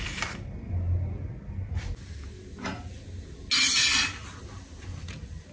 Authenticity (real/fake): real